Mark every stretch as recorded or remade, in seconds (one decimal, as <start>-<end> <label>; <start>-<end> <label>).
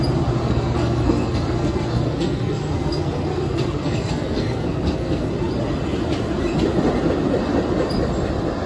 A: 0.0-0.4 recorded; 0.4-5.3 remade; 5.3-8.7 recorded